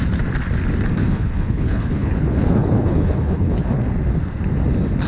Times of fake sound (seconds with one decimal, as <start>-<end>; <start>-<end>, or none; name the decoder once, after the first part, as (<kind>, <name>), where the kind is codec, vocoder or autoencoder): 1.0-3.8 (codec, HILCodec)

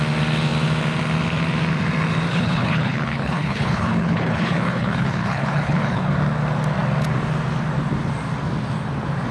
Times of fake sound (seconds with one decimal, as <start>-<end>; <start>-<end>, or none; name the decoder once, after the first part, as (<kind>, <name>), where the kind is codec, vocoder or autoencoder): 2.3-6.1 (codec, HILCodec)